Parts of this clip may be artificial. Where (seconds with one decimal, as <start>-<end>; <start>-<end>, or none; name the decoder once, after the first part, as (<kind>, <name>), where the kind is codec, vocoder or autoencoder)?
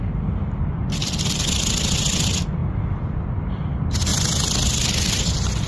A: none